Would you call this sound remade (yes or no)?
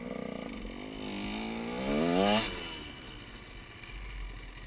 no